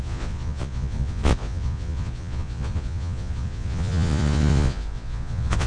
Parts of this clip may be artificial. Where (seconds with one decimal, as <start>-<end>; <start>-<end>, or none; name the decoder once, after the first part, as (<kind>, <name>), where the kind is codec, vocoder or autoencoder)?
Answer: 0.0-5.7 (vocoder, Vocos)